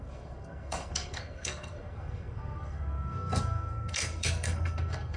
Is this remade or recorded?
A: remade